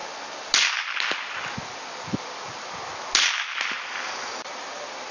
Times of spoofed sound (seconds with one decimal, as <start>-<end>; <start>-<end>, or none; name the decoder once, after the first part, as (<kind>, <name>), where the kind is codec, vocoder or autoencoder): none